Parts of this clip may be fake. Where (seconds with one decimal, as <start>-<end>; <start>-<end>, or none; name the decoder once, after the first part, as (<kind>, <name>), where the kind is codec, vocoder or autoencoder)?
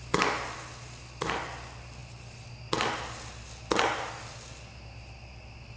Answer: none